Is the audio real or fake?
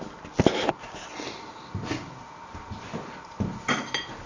real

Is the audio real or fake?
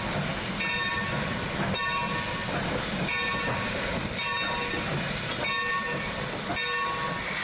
real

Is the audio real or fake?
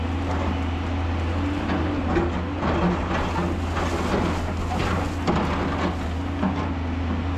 real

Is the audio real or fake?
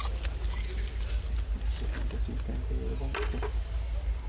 real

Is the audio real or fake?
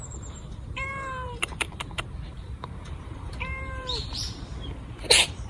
fake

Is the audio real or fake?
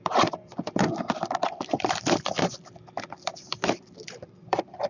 fake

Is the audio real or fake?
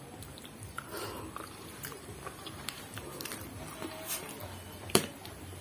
fake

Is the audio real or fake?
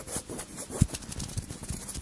fake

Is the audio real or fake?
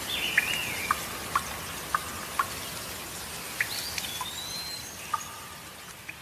real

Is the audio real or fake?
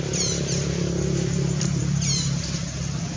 fake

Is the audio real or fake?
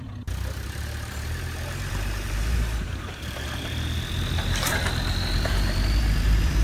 fake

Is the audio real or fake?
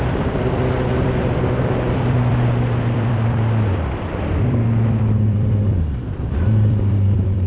fake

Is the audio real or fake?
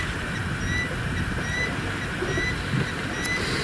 real